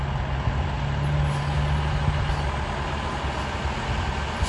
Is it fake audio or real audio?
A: real